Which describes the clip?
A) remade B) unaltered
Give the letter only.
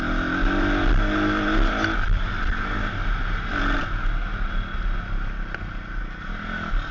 B